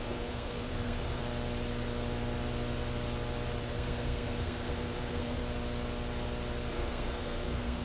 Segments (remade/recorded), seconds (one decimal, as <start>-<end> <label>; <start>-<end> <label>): 0.0-1.2 remade; 1.2-3.6 recorded; 3.6-5.4 remade; 5.4-6.7 recorded; 6.7-7.8 remade